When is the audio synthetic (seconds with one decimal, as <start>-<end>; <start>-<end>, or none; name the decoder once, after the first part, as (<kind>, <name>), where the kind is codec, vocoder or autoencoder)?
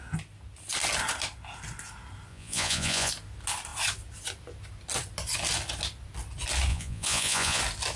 2.3-3.1 (vocoder, Vocos); 6.7-7.6